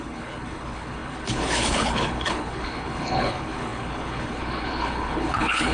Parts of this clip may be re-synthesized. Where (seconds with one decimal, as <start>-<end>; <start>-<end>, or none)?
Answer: 0.0-5.7